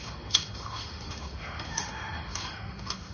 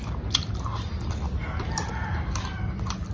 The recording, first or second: second